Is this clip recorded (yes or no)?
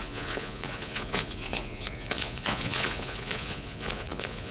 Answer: no